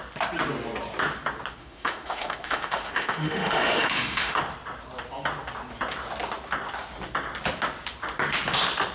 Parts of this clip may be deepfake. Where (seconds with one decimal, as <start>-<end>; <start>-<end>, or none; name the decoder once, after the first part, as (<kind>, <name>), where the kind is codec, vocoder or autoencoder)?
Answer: 1.6-4.4 (autoencoder, DAC-VAE)